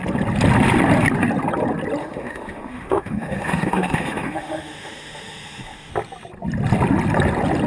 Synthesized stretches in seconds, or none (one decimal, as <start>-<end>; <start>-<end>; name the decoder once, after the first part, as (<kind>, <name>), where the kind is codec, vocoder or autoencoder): 2.0-5.9 (autoencoder, DAC-VAE)